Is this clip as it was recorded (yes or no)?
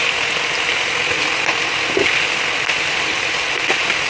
yes